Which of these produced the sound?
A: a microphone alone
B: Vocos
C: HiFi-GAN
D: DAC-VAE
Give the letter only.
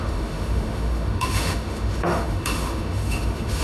D